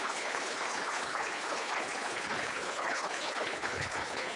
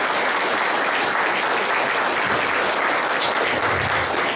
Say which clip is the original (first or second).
second